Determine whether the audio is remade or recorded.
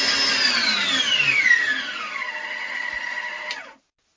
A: recorded